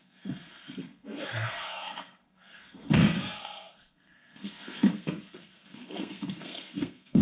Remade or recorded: remade